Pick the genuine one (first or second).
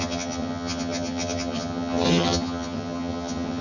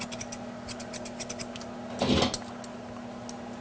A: second